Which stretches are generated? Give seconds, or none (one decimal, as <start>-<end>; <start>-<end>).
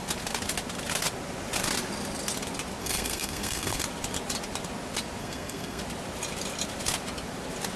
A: 2.8-3.8; 5.2-5.8